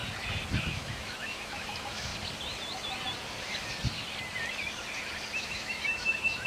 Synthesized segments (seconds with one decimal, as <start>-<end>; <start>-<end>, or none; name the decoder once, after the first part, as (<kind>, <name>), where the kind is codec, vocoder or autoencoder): 0.6-2.1 (autoencoder, DAC-VAE); 5.4-6.5